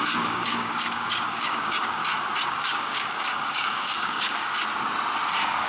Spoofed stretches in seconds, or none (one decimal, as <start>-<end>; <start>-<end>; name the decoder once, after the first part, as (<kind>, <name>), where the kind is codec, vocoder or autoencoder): 0.0-2.0 (codec, DAC); 2.5-4.6; 5.3-5.7

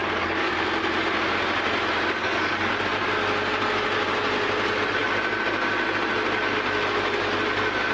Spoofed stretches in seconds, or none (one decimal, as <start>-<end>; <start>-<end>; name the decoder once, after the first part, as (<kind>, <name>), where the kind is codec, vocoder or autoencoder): 0.0-0.5 (codec, DAC); 2.2-2.7

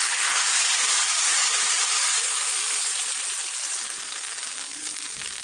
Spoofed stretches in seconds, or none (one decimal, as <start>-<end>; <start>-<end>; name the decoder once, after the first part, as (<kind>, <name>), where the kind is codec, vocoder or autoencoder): 0.0-2.9 (codec, DAC); 4.0-5.4

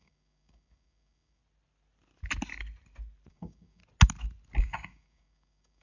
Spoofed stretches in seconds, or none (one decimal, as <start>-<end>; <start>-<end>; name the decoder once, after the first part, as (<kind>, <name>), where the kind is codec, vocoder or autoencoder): 0.0-1.4 (codec, DAC); 3.3-3.8; 4.6-5.8

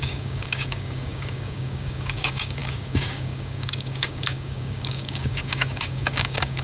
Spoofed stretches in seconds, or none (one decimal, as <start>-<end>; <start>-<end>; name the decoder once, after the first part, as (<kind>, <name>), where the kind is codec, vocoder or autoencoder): 0.0-6.6 (codec, DAC)